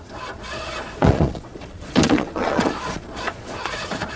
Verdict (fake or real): fake